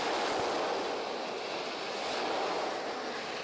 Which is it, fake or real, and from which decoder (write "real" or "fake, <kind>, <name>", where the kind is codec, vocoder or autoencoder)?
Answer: real